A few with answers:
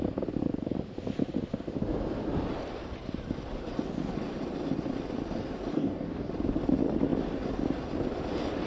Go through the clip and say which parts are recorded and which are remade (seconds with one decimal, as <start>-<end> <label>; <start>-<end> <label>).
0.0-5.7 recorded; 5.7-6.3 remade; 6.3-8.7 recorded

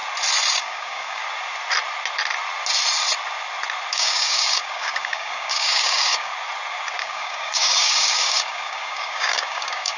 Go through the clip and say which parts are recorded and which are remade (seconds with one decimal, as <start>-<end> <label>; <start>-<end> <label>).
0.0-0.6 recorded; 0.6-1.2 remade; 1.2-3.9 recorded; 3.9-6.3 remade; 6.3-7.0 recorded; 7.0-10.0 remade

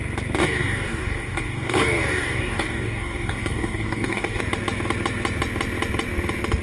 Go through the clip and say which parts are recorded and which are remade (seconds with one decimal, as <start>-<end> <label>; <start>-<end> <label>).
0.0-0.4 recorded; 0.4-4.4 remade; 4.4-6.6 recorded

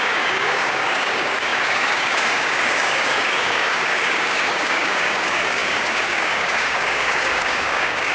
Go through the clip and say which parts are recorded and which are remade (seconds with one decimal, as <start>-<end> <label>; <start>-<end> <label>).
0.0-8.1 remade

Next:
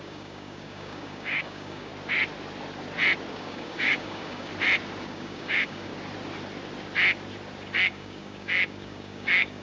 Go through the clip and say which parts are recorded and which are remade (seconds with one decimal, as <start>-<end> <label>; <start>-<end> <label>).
0.0-1.9 remade; 1.9-3.3 recorded; 3.3-4.5 remade; 4.5-5.0 recorded; 5.0-5.9 remade; 5.9-7.8 recorded; 7.8-9.6 remade